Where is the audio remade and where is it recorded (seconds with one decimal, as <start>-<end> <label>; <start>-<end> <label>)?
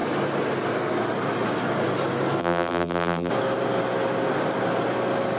0.0-2.4 recorded; 2.4-3.3 remade; 3.3-5.4 recorded